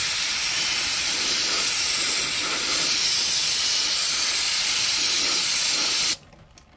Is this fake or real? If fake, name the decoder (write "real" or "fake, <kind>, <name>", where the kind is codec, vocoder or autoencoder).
real